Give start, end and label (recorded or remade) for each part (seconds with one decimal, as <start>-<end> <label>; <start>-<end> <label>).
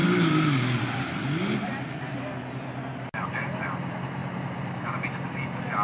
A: 0.0-5.8 recorded